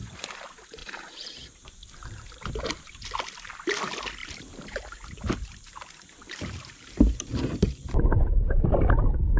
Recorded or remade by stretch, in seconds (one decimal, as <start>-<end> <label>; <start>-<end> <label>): 0.0-0.8 recorded; 0.8-2.5 remade; 2.5-4.2 recorded; 4.2-8.9 remade; 8.9-9.4 recorded